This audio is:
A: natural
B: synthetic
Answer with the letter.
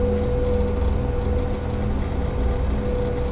A